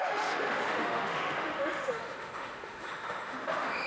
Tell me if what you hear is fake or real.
fake